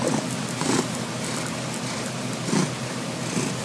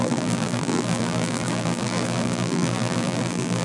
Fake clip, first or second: second